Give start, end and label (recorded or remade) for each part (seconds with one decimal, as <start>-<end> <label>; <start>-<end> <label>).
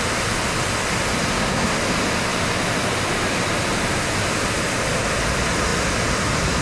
0.0-1.3 recorded; 1.3-1.8 remade; 1.8-6.6 recorded